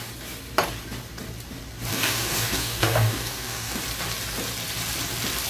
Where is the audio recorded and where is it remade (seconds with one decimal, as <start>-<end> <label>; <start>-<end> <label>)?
0.0-1.9 recorded; 1.9-3.8 remade; 3.8-5.5 recorded

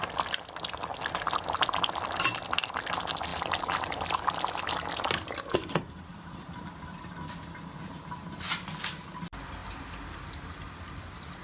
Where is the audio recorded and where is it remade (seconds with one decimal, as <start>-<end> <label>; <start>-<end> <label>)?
0.0-3.3 recorded; 3.3-4.3 remade; 4.3-6.1 recorded; 6.1-7.1 remade; 7.1-11.4 recorded

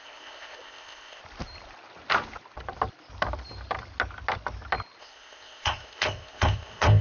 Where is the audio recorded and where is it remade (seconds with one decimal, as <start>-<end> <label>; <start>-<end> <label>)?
0.0-1.2 remade; 1.2-5.0 recorded; 5.0-7.0 remade

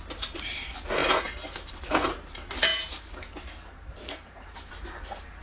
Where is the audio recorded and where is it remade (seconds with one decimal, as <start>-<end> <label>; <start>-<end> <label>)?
0.0-1.0 remade; 1.0-1.7 recorded; 1.7-5.4 remade

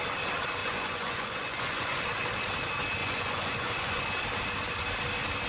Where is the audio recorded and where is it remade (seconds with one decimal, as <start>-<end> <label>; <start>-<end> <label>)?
0.0-0.6 recorded; 0.6-2.0 remade; 2.0-3.0 recorded; 3.0-4.0 remade; 4.0-5.5 recorded